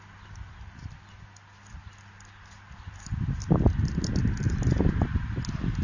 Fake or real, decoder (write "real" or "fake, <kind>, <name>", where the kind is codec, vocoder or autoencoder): real